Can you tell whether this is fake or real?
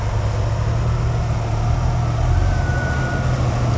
real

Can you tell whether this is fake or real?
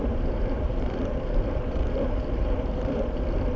fake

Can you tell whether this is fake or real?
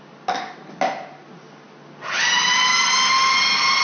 real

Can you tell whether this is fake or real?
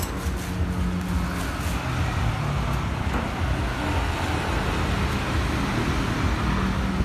real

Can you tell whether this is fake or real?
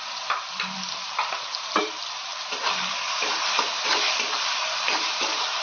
fake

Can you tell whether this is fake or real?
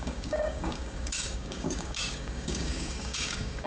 fake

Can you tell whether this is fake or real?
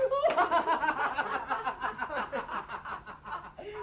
real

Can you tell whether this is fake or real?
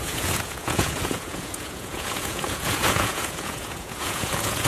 fake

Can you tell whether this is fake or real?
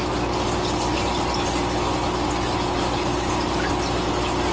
real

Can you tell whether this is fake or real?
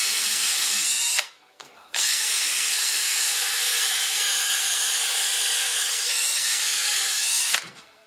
fake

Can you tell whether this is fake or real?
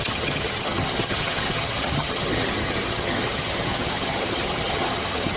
fake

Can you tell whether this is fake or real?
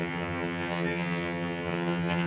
fake